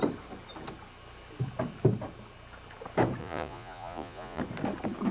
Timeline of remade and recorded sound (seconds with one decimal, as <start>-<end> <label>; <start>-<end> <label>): 0.0-3.2 recorded; 3.2-4.4 remade; 4.4-5.1 recorded